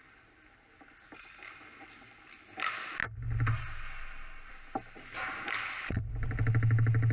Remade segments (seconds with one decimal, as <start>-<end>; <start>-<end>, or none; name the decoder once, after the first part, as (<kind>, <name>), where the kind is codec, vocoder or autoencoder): none